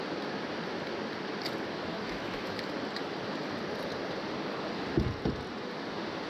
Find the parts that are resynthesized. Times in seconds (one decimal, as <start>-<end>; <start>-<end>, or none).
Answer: 1.9-2.6

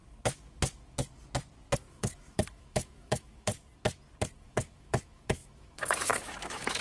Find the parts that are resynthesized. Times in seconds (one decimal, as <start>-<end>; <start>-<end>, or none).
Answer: 1.9-3.5; 4.4-6.8